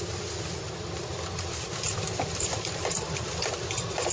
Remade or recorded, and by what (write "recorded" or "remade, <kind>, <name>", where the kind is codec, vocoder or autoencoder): remade, vocoder, BigVGAN v2